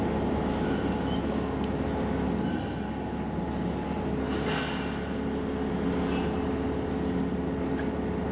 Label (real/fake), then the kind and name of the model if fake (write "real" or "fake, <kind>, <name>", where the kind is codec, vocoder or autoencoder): real